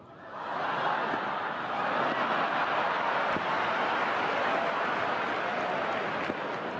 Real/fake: real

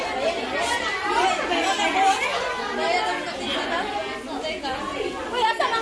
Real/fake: real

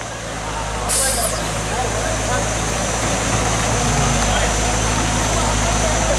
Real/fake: real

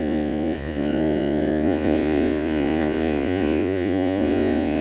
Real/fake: fake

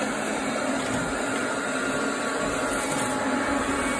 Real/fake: real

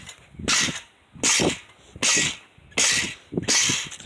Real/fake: real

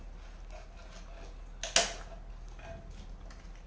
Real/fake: real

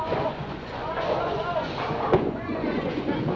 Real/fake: fake